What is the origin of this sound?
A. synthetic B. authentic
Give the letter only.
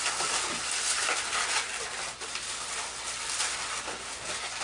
B